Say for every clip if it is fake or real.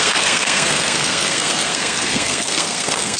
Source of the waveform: fake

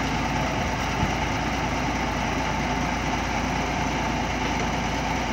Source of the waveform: real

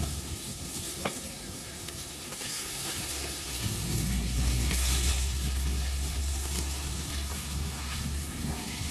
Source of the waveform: fake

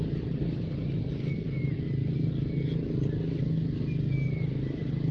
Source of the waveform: real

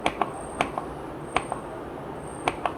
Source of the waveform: real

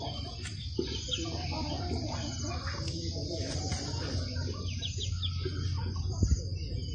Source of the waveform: real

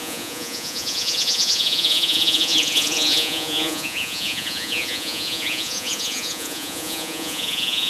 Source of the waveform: fake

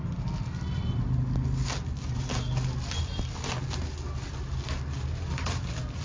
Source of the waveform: real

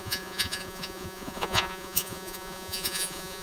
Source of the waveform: fake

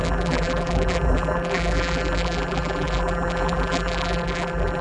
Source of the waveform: fake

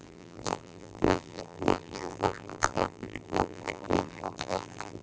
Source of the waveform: fake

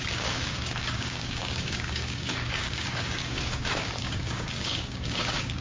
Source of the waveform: fake